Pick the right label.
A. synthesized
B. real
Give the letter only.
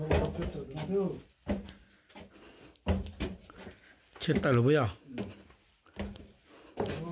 B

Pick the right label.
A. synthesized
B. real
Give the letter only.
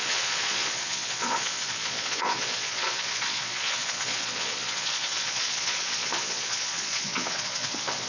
A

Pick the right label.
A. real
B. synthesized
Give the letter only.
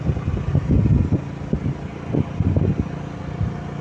A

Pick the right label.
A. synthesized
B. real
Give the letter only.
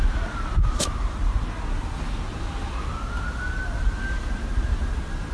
B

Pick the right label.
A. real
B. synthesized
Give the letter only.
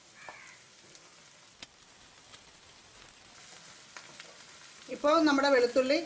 A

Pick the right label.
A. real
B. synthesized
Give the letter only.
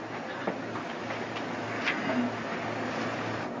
A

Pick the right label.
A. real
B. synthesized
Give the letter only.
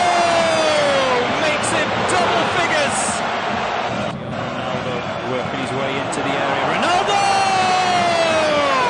A